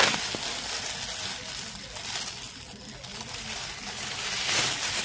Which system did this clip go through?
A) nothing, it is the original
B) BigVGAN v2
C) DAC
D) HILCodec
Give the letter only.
A